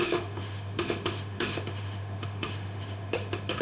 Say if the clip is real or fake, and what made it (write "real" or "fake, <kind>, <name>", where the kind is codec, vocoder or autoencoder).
fake, autoencoder, DAC-VAE